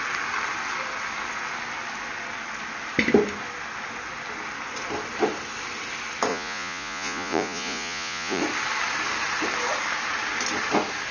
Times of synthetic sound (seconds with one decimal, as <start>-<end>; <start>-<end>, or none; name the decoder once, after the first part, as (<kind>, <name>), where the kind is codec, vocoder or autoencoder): 6.3-8.4 (vocoder, Vocos)